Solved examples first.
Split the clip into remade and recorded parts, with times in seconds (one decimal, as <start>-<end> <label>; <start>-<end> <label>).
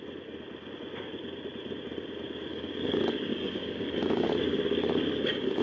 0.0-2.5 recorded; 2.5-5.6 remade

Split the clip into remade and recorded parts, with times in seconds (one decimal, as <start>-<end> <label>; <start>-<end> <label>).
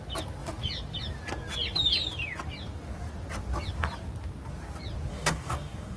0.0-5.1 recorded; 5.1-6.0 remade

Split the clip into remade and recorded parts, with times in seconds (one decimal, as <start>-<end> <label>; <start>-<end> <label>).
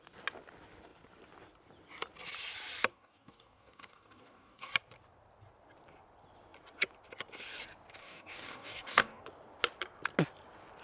0.0-2.9 recorded; 2.9-4.7 remade; 4.7-8.0 recorded; 8.0-9.2 remade; 9.2-10.8 recorded